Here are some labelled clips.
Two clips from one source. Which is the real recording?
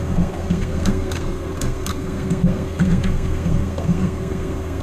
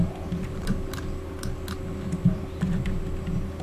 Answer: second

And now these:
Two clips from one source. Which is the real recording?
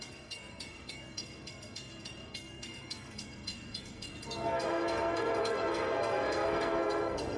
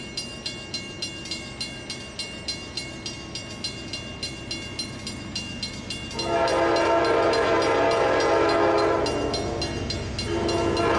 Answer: second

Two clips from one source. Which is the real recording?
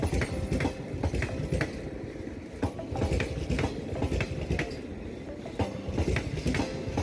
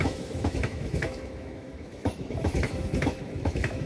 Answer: first